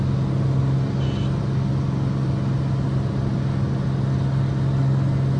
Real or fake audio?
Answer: real